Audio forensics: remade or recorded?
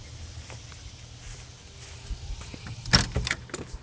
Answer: recorded